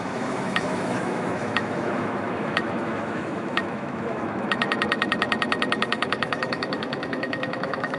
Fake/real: fake